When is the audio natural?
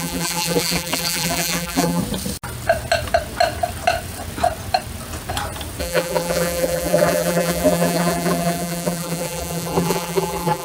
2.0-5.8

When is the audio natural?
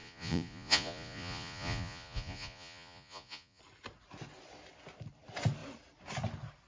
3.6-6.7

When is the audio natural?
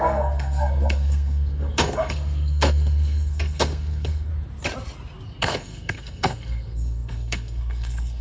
4.3-5.4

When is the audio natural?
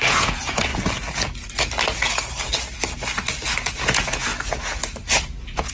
0.7-3.7; 4.3-5.1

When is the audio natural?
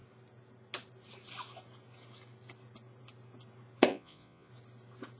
0.0-3.9; 4.5-5.2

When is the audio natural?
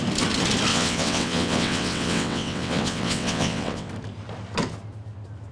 0.0-0.7; 3.9-5.5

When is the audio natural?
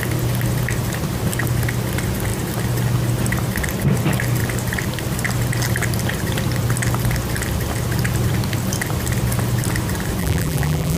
0.0-10.2